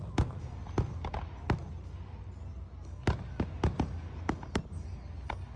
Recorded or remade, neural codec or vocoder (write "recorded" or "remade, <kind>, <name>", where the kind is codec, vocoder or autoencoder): recorded